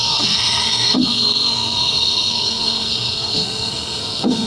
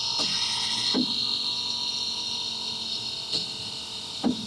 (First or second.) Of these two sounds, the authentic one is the second